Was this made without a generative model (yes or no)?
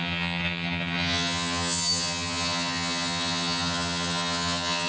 no